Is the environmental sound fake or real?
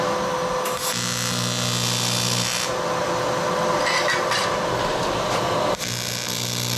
real